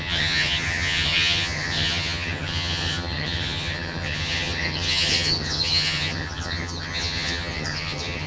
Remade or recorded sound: remade